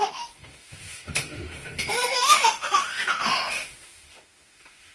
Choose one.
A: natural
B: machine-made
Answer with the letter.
B